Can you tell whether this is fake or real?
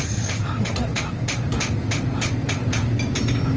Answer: real